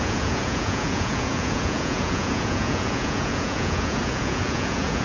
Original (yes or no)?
no